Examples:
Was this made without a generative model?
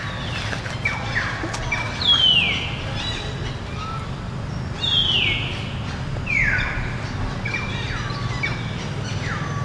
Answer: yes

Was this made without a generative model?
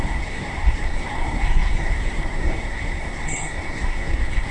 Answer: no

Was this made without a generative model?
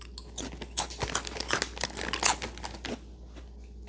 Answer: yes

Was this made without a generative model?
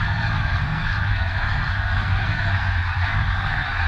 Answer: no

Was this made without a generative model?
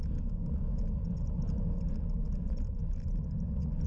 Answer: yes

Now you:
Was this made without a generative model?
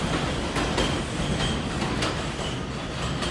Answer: yes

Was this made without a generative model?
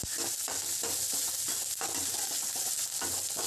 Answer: yes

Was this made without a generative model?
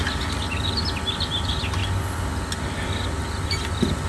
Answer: yes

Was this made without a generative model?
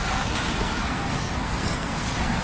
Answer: no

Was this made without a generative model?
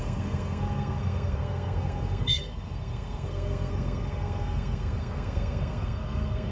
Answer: no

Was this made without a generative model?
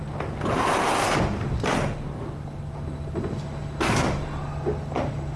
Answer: yes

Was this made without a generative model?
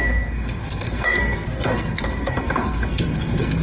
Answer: no